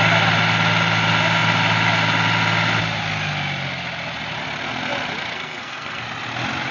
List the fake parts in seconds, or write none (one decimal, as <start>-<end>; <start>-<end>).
5.3-6.0